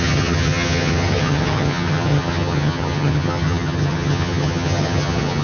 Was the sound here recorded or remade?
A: remade